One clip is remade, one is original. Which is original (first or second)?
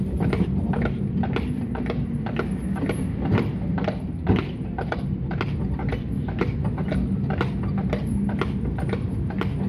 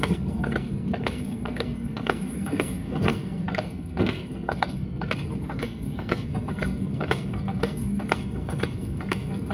first